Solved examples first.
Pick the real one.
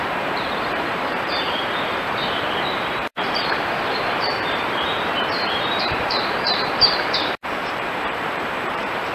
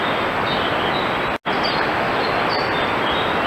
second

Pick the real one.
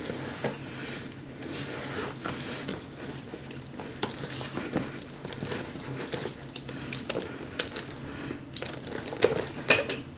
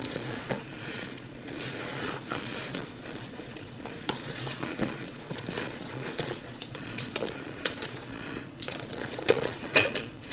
first